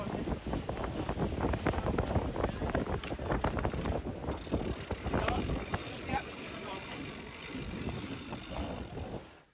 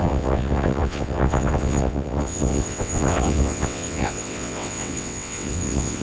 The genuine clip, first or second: first